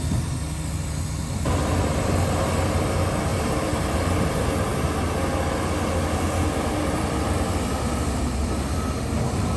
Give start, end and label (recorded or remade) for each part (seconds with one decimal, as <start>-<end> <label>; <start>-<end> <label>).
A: 0.0-3.3 recorded; 3.3-4.1 remade; 4.1-9.6 recorded